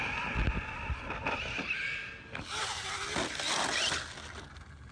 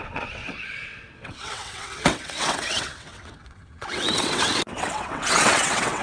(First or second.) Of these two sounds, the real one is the first